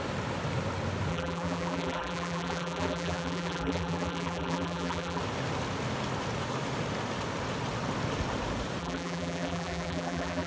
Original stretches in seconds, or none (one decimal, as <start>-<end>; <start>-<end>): 0.0-1.1; 5.2-8.8